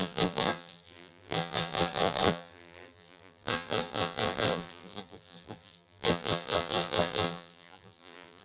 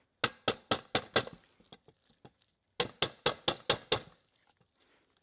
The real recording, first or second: second